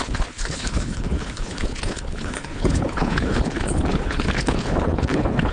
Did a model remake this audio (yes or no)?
yes